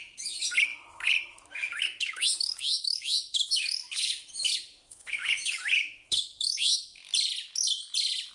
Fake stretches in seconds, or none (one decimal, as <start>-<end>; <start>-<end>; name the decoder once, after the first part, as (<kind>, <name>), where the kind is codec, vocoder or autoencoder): 0.0-7.0 (autoencoder, DAC-VAE)